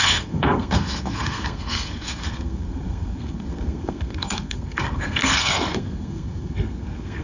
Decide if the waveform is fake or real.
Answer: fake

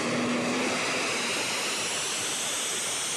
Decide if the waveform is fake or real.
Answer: real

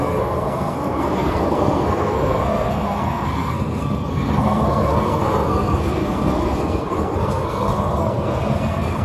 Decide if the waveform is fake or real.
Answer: fake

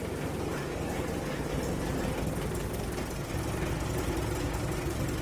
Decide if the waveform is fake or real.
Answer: real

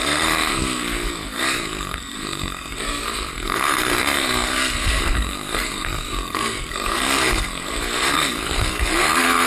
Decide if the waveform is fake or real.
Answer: fake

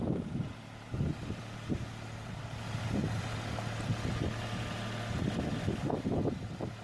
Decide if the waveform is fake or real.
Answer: real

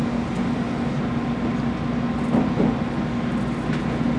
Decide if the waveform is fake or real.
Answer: real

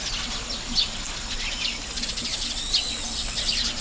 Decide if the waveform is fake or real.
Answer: real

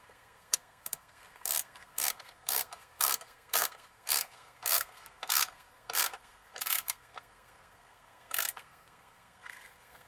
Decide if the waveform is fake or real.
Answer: fake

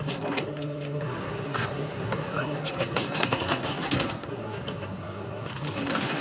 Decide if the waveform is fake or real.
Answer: fake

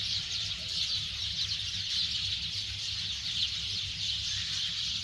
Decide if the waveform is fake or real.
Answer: real